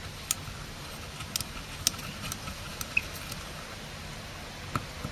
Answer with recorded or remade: recorded